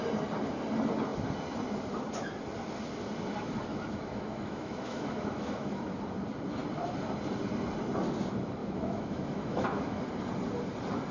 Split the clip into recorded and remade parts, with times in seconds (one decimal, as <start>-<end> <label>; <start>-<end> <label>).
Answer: 0.0-3.7 recorded; 3.7-5.9 remade; 5.9-8.6 recorded; 8.6-10.0 remade; 10.0-11.1 recorded